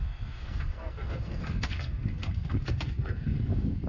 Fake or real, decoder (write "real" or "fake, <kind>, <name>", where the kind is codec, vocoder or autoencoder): fake, codec, SNAC